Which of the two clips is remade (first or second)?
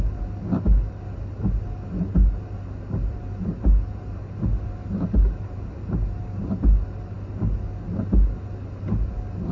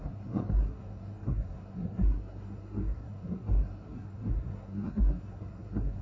second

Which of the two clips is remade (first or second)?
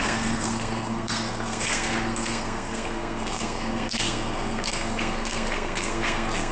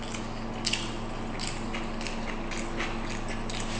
first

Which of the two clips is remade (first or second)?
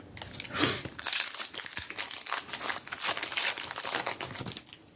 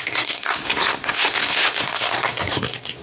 second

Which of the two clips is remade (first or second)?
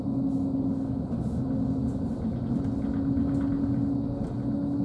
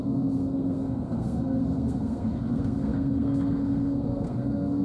second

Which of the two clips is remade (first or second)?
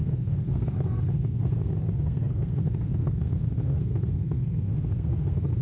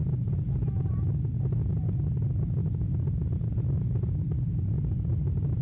first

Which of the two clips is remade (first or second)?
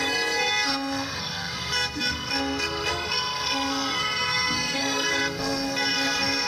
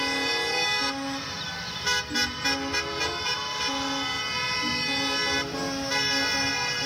first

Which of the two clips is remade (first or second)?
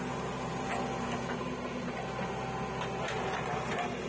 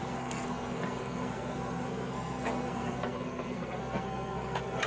second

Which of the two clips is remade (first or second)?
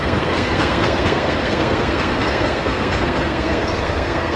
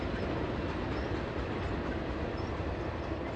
first